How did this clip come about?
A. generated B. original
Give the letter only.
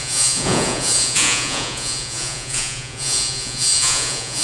A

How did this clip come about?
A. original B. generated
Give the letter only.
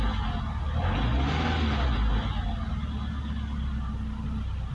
A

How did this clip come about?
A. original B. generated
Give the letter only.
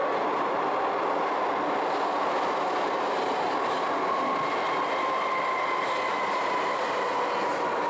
A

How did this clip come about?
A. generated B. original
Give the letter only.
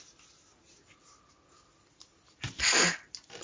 B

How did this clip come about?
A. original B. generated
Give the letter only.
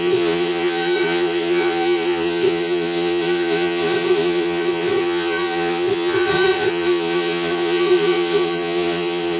B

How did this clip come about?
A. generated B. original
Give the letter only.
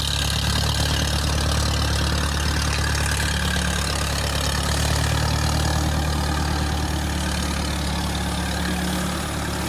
B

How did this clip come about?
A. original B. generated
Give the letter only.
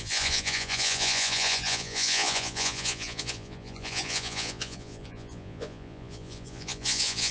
B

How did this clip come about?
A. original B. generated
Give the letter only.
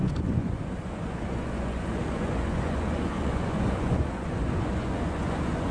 B